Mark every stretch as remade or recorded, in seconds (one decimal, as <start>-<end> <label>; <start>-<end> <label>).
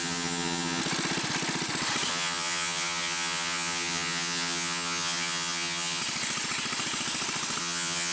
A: 0.0-0.8 remade; 0.8-2.1 recorded; 2.1-6.0 remade; 6.0-7.6 recorded; 7.6-8.1 remade